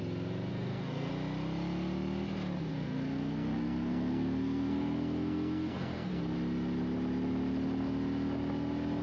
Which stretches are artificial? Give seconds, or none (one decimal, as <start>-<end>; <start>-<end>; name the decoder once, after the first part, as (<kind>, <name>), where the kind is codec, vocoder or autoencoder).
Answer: 0.5-1.1 (codec, SNAC); 2.7-6.2